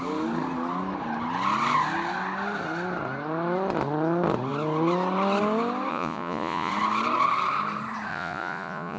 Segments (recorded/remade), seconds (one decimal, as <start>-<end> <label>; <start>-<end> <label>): 0.0-5.9 recorded; 5.9-6.7 remade; 6.7-8.1 recorded; 8.1-9.0 remade